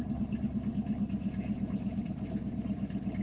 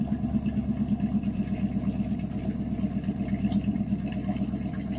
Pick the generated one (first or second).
first